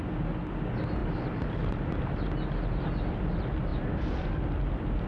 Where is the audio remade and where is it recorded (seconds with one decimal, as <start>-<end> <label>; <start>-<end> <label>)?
0.0-5.1 recorded